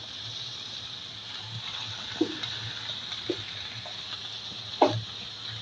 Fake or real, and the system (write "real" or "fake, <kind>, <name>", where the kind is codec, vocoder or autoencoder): fake, vocoder, BigVGAN v2